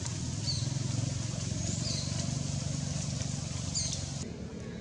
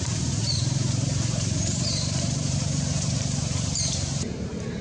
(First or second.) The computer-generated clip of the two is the second